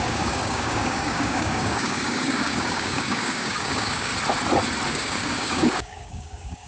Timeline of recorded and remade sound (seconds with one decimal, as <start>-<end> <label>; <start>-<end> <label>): 0.0-4.1 remade; 4.1-4.9 recorded; 4.9-6.7 remade